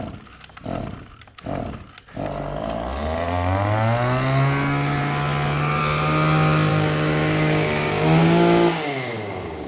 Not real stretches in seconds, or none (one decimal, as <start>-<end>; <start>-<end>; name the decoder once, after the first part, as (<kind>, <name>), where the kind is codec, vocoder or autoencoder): 6.7-9.7 (codec, DAC)